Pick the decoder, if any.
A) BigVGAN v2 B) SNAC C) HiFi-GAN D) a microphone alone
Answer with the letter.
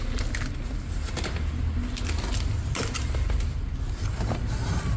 D